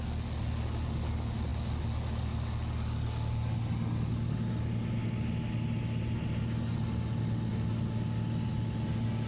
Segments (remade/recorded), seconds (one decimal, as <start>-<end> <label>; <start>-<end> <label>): 0.0-9.3 recorded